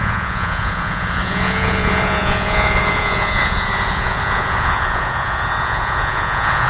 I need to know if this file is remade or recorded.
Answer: remade